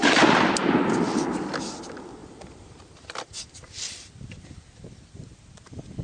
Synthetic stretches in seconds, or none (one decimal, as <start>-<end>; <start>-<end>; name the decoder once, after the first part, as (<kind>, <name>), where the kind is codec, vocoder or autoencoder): 0.6-1.2 (vocoder, BigVGAN v2); 2.2-4.0